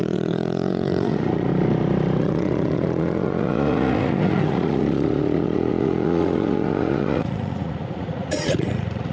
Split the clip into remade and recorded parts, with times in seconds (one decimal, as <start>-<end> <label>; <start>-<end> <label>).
0.0-1.5 remade; 1.5-2.2 recorded; 2.2-9.1 remade